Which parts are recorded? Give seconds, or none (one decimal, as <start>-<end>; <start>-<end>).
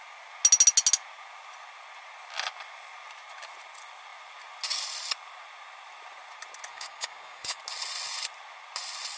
0.0-6.7; 7.6-9.2